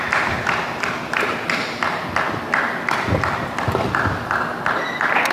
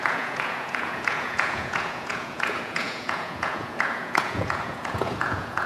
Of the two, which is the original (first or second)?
first